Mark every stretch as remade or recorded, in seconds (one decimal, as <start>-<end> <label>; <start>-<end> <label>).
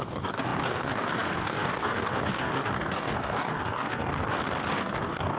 0.0-4.1 remade; 4.1-4.7 recorded; 4.7-5.4 remade